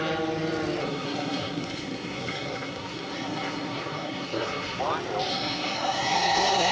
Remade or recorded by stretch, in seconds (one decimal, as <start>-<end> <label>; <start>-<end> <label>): 0.0-0.8 recorded; 0.8-4.8 remade; 4.8-5.3 recorded; 5.3-6.7 remade